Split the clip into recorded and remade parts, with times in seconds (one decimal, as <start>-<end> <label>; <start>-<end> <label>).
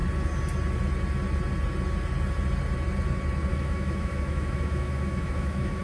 0.0-3.5 recorded; 3.5-5.8 remade